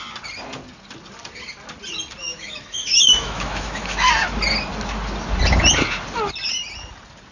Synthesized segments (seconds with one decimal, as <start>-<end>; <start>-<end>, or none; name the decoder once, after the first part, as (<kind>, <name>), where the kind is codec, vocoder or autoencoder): 2.2-4.1 (autoencoder, DAC-VAE)